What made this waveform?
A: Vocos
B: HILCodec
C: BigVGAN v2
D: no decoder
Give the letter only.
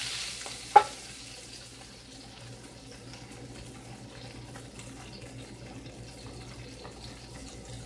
D